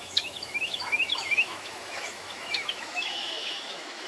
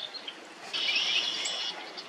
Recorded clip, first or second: second